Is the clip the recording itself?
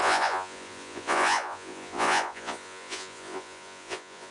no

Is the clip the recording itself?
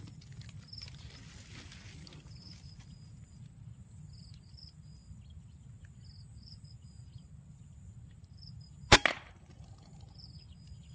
yes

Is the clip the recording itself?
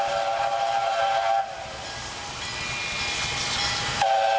yes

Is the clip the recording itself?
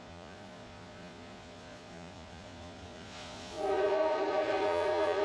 no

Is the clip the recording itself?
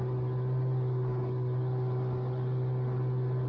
yes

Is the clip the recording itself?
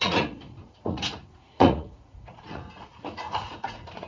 no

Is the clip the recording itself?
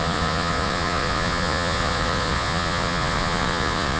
no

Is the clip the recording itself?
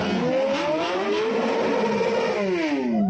yes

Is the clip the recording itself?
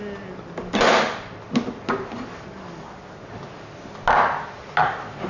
yes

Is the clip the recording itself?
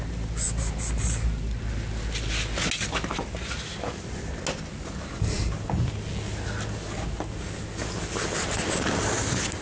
yes